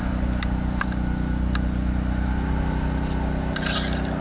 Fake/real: real